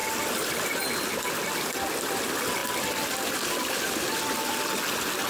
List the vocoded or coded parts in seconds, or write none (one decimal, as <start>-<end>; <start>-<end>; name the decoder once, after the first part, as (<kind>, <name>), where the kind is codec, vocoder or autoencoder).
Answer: none